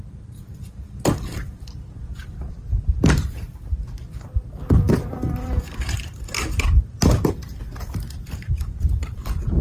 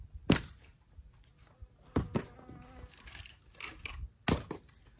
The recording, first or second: second